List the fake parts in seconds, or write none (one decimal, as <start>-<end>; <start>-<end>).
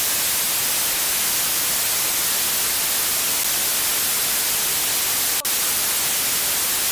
none